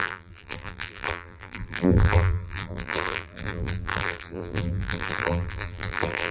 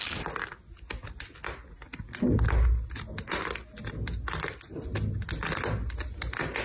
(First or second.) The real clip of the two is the second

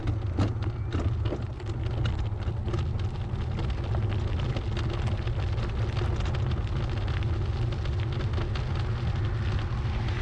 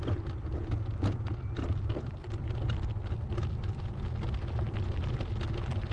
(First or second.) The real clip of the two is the first